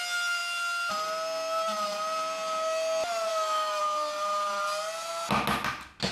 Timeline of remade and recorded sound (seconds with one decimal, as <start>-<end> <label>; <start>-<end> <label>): 0.0-3.3 recorded; 3.3-3.8 remade; 3.8-6.1 recorded